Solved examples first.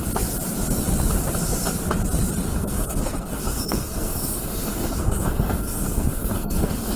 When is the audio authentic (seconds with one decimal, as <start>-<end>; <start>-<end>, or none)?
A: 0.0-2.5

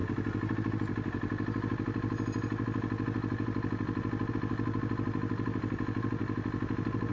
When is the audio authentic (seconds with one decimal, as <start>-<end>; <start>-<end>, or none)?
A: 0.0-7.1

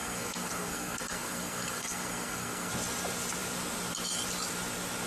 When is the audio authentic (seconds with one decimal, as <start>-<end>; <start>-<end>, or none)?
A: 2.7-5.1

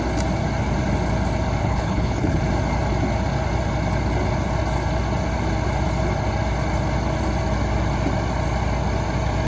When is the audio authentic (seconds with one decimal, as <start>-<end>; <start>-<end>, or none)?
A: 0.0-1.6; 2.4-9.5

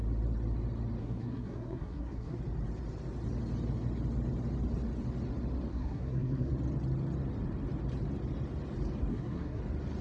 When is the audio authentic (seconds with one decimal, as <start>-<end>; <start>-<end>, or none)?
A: 0.0-1.0; 2.4-5.7; 6.5-9.1; 9.6-10.0

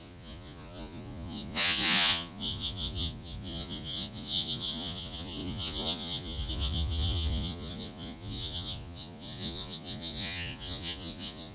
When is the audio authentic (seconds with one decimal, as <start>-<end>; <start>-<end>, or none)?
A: none